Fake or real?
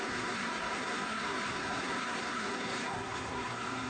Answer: fake